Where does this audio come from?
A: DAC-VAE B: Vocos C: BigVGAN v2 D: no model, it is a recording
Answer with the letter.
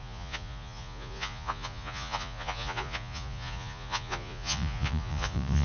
B